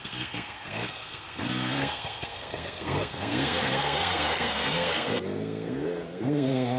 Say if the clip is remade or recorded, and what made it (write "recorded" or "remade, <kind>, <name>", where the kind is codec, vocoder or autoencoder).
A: remade, codec, SNAC